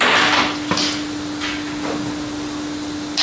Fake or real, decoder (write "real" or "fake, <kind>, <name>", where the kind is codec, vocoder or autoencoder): real